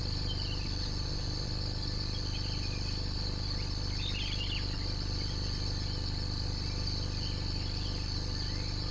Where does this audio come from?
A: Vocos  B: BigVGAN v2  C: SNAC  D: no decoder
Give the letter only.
D